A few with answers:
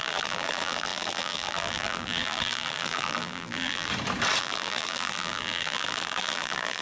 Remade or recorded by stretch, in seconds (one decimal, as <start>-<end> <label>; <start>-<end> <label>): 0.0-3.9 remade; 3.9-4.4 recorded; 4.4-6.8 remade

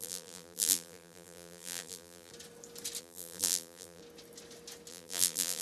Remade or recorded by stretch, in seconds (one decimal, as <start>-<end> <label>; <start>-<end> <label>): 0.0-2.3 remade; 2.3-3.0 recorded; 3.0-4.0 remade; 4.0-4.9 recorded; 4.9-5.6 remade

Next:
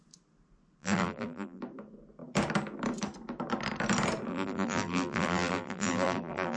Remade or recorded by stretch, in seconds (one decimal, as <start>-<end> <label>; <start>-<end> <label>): 0.0-0.8 recorded; 0.8-1.6 remade; 1.6-4.3 recorded; 4.3-6.6 remade

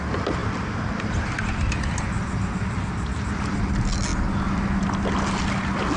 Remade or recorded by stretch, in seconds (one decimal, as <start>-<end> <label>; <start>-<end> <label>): 0.0-6.0 recorded

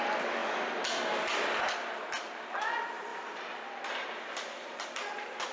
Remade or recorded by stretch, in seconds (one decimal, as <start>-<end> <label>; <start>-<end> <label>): 0.0-3.1 recorded; 3.1-5.0 remade; 5.0-5.5 recorded